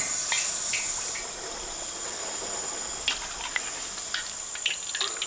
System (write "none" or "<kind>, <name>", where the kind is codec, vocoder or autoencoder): none